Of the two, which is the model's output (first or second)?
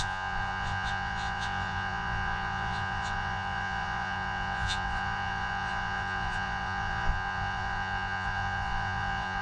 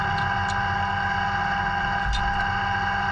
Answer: first